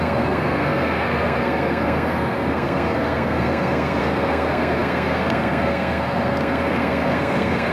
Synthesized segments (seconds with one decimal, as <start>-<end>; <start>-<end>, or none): 0.0-7.7

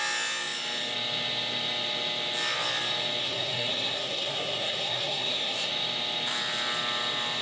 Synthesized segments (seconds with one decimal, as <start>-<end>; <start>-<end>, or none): 3.2-5.7

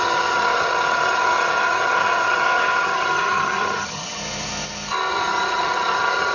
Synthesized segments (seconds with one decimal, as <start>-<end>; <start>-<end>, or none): 0.0-4.2; 5.1-6.3

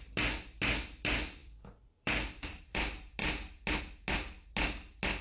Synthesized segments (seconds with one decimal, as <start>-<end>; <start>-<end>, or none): 1.4-2.6